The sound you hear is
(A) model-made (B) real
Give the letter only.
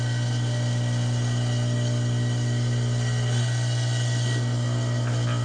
B